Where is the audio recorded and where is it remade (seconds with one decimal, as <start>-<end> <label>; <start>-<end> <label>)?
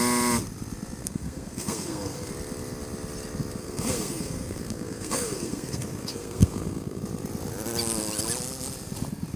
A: 0.0-1.0 recorded; 1.0-2.3 remade; 2.3-3.6 recorded; 3.6-7.0 remade; 7.0-9.4 recorded